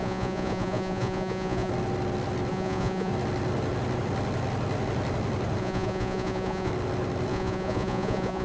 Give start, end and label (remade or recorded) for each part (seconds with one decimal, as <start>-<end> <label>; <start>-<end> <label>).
0.0-1.7 remade; 1.7-2.5 recorded; 2.5-3.1 remade; 3.1-5.6 recorded; 5.6-6.7 remade; 6.7-7.3 recorded; 7.3-8.4 remade